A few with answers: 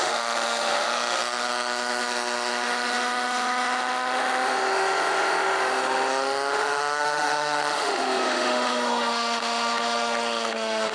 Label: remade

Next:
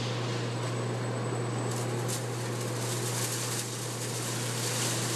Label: recorded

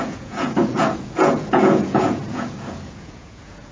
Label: remade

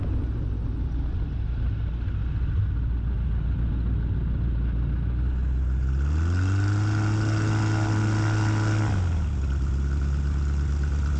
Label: recorded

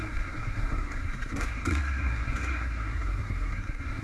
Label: remade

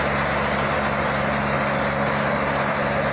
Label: recorded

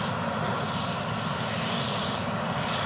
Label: recorded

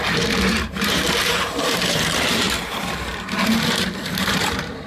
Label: remade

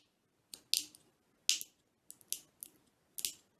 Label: recorded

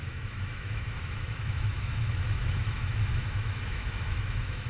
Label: remade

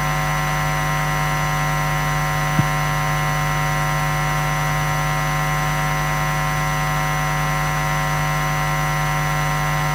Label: recorded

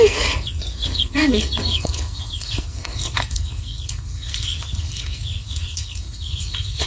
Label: remade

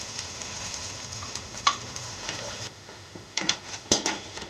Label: remade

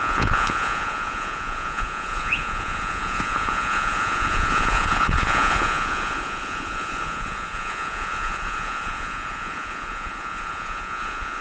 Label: remade